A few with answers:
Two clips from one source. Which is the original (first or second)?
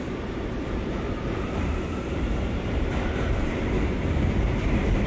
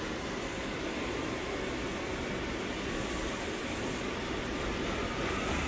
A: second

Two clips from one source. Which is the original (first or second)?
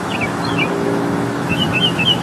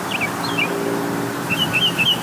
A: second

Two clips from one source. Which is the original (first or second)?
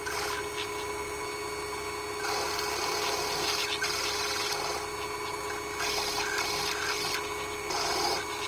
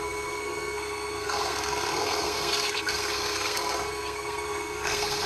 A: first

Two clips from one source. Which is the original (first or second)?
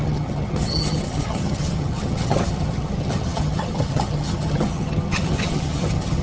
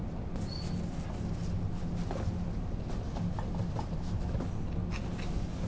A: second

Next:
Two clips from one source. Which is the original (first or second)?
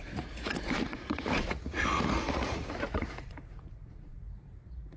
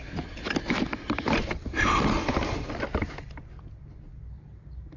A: second